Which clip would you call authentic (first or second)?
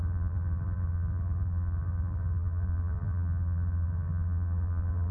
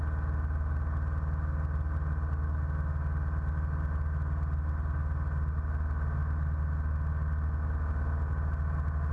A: second